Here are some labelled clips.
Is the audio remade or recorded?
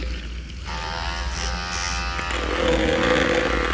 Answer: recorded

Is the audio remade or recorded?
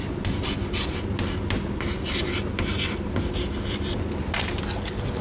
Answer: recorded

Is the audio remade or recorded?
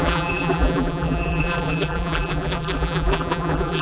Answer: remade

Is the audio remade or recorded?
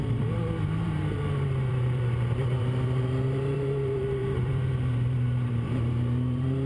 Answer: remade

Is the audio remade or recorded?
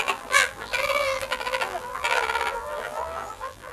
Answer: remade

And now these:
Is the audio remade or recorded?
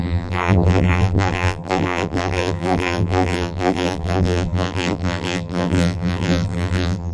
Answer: remade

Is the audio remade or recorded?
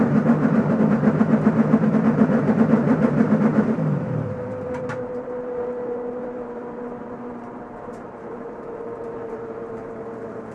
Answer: remade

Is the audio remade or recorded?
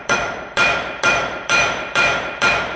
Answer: remade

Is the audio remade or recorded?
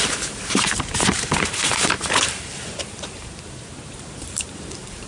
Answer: remade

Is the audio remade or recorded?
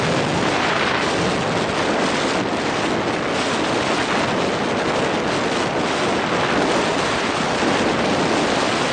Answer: recorded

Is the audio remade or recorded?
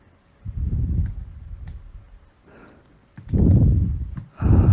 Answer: recorded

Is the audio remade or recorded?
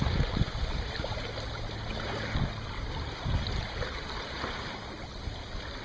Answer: recorded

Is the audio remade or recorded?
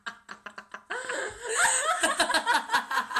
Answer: recorded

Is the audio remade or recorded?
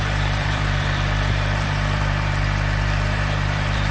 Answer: remade